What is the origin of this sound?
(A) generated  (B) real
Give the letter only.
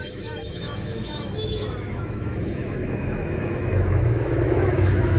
A